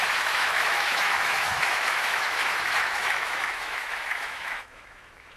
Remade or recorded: remade